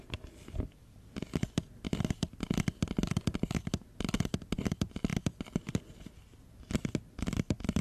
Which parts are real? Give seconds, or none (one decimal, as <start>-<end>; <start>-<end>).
0.0-7.8